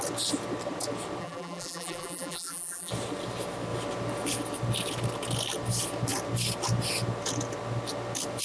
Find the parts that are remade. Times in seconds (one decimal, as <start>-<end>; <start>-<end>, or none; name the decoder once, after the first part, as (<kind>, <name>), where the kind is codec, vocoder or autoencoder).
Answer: 1.2-2.9 (vocoder, BigVGAN v2)